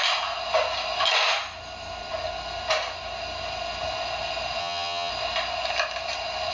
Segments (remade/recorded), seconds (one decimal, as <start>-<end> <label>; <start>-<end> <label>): 0.0-4.6 recorded; 4.6-5.1 remade; 5.1-6.5 recorded